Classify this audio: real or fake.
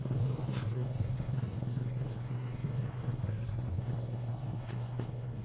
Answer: fake